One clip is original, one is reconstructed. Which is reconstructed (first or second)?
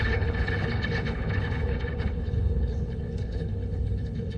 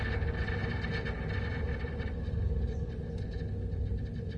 first